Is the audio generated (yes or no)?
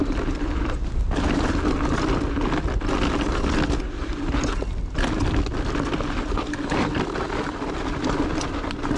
no